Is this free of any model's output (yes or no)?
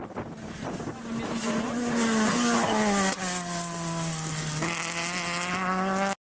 yes